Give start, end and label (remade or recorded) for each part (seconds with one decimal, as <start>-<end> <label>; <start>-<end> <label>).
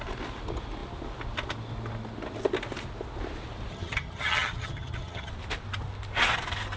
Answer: 0.0-3.7 recorded; 3.7-5.3 remade; 5.3-6.8 recorded